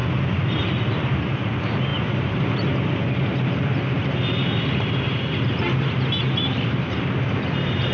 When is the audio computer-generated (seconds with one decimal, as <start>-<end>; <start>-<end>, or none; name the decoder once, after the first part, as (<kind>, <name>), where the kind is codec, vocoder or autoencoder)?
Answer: 0.6-3.7 (vocoder, BigVGAN v2); 6.2-7.9